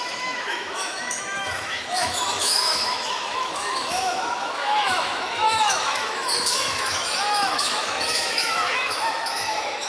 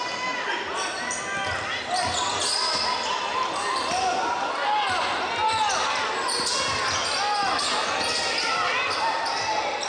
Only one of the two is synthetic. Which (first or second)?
first